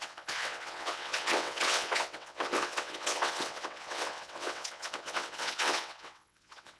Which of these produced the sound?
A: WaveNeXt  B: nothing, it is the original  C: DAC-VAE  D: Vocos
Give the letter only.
A